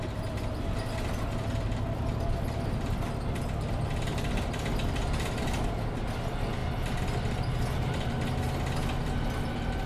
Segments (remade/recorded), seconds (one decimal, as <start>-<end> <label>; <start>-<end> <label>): 0.0-9.9 recorded